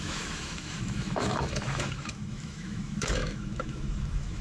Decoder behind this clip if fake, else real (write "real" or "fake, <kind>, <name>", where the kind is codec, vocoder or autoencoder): fake, autoencoder, DAC-VAE